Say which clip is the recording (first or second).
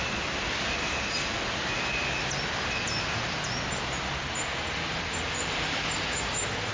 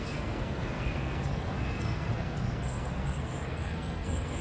first